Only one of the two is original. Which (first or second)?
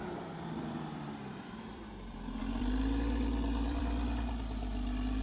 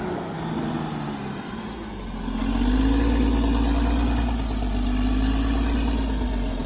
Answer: second